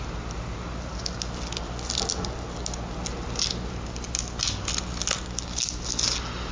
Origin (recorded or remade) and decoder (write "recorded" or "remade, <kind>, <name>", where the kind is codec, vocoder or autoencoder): recorded